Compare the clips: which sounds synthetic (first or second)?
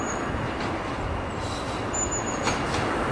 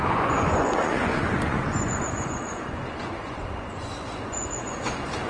second